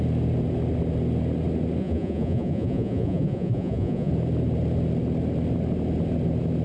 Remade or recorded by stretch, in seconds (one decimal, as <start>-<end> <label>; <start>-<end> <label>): 0.0-1.8 recorded; 1.8-4.1 remade; 4.1-6.6 recorded